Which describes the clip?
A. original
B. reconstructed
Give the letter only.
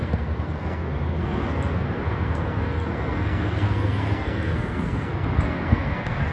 B